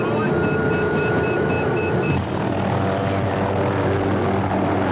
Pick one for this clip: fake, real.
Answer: real